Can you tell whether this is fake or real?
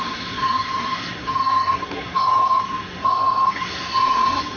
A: fake